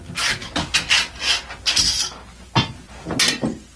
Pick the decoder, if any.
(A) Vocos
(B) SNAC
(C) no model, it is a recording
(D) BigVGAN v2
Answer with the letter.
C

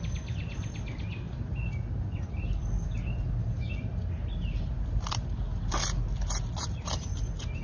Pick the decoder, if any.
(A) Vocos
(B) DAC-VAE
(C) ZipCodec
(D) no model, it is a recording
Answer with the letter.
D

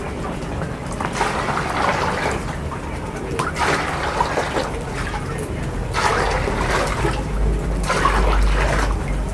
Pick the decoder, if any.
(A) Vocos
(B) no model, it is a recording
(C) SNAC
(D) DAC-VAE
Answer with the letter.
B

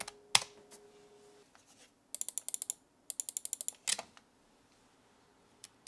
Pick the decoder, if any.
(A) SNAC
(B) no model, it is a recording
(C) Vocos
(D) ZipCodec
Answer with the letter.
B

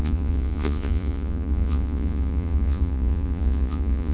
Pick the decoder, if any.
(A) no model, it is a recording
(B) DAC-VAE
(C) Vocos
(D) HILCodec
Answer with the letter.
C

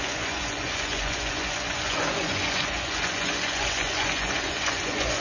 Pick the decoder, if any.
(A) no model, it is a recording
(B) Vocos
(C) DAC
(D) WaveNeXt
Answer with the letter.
B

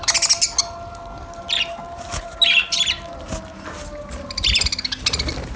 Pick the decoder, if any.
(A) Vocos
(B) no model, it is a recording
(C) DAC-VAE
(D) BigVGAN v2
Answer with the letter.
B